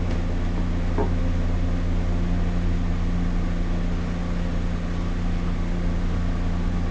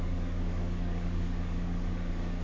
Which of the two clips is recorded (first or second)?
first